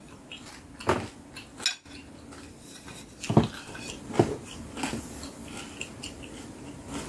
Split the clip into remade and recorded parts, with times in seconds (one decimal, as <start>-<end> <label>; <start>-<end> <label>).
0.0-7.1 recorded